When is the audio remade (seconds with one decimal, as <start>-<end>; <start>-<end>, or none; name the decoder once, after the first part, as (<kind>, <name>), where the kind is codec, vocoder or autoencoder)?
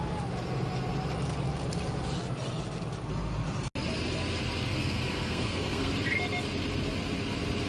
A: 4.7-5.9 (codec, SNAC)